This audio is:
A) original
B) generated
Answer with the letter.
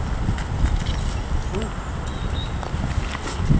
A